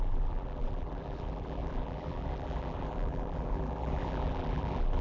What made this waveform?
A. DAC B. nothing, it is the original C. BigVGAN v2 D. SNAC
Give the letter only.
C